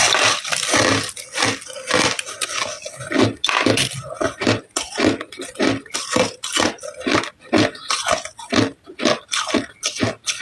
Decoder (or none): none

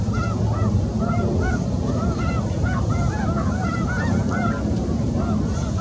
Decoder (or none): none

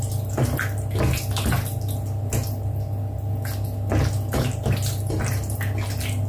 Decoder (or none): none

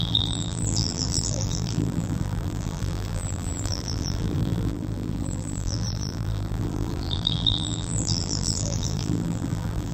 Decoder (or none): vocoder, BigVGAN v2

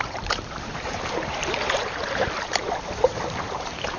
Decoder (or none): vocoder, BigVGAN v2